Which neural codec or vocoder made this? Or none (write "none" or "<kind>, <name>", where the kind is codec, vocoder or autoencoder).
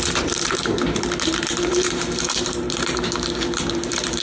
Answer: vocoder, BigVGAN v2